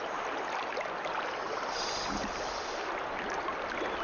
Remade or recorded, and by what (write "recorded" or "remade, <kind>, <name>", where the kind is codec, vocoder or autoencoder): recorded